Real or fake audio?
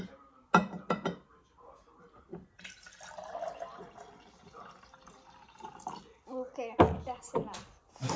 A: real